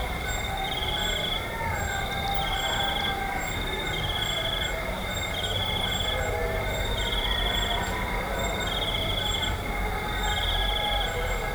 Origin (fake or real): fake